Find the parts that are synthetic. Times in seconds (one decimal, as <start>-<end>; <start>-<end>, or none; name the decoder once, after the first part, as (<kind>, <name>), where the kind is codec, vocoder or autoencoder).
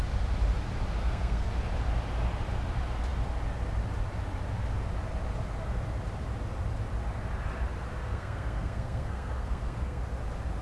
1.0-1.5 (codec, SNAC); 8.0-10.0